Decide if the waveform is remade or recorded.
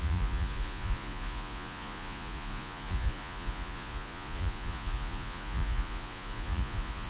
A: remade